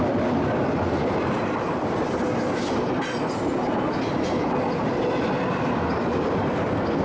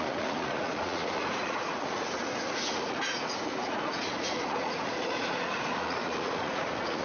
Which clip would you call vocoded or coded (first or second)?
second